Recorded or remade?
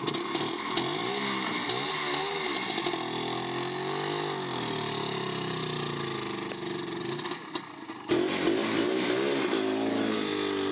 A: recorded